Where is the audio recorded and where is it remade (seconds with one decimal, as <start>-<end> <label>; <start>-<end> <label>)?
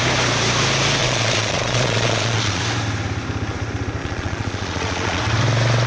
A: 0.0-1.0 recorded; 1.0-2.6 remade; 2.6-4.0 recorded; 4.0-5.2 remade; 5.2-5.9 recorded